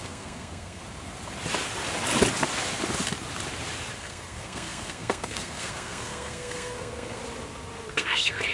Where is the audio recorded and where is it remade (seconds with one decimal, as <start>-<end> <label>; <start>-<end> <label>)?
0.0-0.8 remade; 0.8-4.0 recorded; 4.0-7.2 remade; 7.2-7.9 recorded; 7.9-8.5 remade